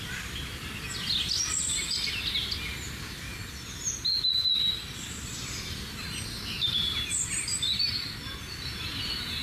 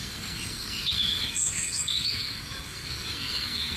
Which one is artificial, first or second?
second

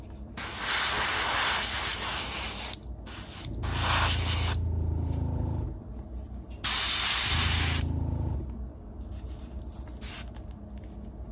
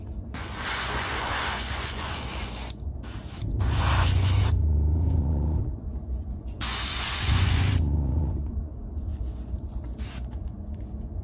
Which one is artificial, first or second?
second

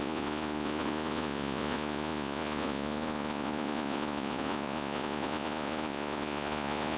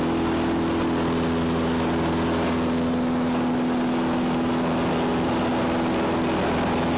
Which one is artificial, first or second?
first